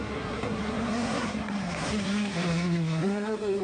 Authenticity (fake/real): fake